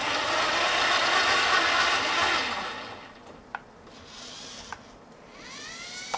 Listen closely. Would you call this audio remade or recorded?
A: recorded